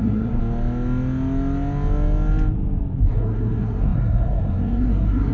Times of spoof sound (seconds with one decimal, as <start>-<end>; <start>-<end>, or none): 0.0-0.4; 3.0-5.3